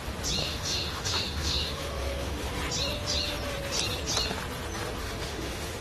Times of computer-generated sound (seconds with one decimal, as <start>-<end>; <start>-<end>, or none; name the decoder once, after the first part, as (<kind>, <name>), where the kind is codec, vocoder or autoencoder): 0.4-2.5 (autoencoder, DAC-VAE); 5.0-5.8